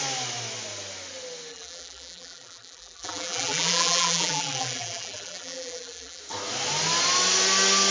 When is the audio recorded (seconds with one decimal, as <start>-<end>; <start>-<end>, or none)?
0.0-1.5; 6.2-7.9